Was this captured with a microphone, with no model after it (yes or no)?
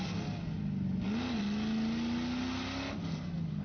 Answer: yes